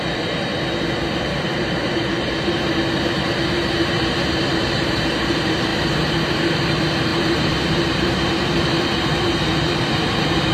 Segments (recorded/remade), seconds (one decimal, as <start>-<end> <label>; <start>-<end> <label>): 0.0-0.5 remade; 0.5-1.1 recorded; 1.1-10.5 remade